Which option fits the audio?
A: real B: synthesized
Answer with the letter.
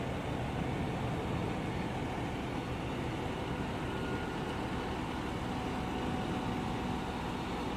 A